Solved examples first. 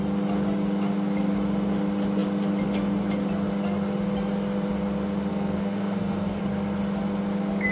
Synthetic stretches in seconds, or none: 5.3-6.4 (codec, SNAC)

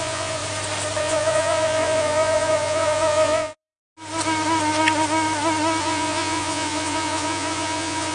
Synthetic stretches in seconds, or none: 0.0-0.4 (vocoder, Vocos); 1.0-3.8; 5.8-8.1

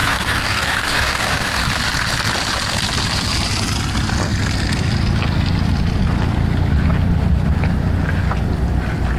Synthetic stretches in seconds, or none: 0.0-1.6 (codec, DAC)

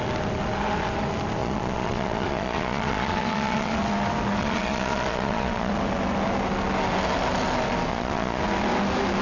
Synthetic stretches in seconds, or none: 1.4-3.7 (vocoder, Vocos); 4.4-5.7; 7.9-8.4

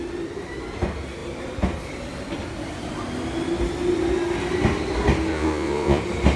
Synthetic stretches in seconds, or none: 5.3-6.0 (vocoder, Vocos)